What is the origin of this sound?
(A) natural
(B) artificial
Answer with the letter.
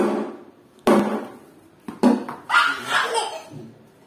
A